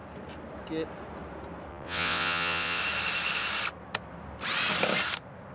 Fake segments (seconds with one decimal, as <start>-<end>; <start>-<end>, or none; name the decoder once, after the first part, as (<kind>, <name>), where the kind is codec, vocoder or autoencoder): 1.7-2.8 (vocoder, WaveNeXt)